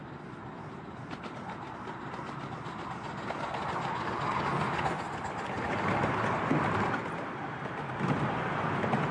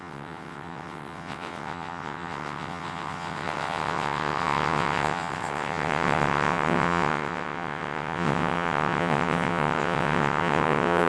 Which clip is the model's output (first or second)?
second